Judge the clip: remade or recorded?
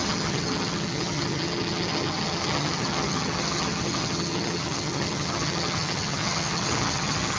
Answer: remade